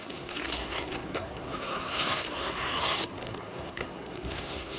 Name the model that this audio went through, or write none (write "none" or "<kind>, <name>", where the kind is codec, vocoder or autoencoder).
codec, SNAC